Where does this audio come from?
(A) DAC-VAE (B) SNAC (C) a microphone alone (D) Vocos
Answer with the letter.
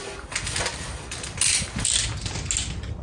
C